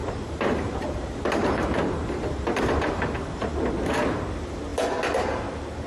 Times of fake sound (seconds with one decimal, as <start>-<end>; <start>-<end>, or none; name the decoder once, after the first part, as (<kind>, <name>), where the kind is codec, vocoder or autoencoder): 0.0-3.5 (vocoder, BigVGAN v2)